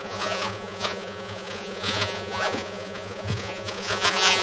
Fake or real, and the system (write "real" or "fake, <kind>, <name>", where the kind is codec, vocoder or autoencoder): fake, vocoder, Vocos